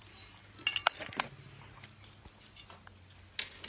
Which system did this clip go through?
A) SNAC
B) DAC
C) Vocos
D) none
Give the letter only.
D